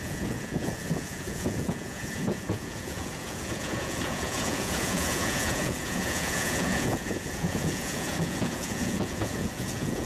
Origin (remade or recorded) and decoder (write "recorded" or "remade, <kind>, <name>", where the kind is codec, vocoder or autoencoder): remade, vocoder, Vocos